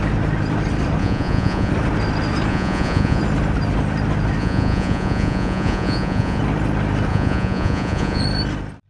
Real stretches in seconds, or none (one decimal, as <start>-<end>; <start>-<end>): 0.0-1.0; 1.7-2.5; 3.2-4.4; 6.4-7.1; 8.2-8.9